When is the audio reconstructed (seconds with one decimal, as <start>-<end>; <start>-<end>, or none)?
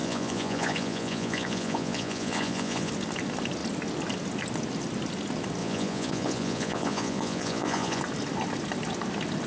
0.0-2.9; 5.6-8.0